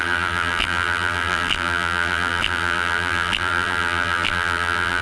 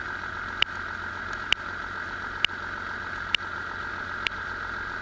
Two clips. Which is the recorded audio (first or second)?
second